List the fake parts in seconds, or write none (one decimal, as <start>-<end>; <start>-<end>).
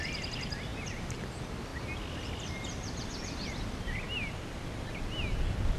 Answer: 0.7-1.2